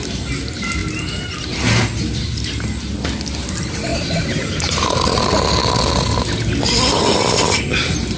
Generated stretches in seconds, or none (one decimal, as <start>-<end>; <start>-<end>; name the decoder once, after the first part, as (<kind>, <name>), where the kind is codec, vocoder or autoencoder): 3.9-4.8 (vocoder, BigVGAN v2)